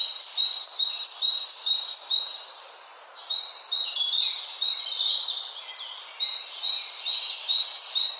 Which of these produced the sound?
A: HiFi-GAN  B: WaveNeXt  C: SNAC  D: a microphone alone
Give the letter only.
D